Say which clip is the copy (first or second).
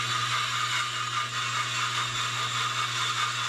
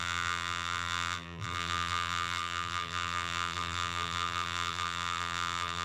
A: second